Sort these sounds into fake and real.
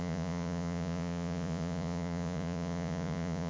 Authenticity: fake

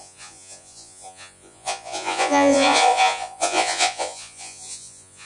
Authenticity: fake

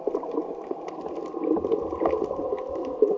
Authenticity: real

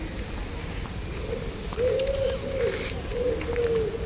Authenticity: real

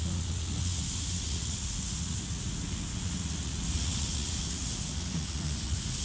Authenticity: fake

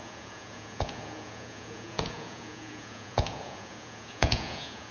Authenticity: fake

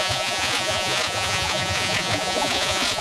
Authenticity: fake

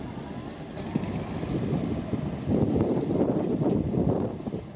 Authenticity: real